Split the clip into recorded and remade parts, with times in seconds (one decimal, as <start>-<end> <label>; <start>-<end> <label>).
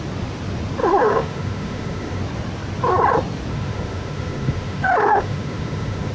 0.0-0.8 recorded; 0.8-2.2 remade; 2.2-3.5 recorded; 3.5-6.1 remade